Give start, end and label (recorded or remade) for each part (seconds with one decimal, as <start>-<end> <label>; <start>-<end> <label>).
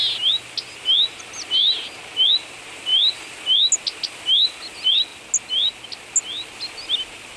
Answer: 0.0-7.4 recorded